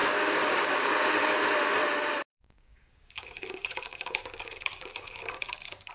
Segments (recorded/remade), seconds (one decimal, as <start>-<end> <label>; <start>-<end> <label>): 0.0-0.9 remade; 0.9-2.3 recorded; 2.3-5.9 remade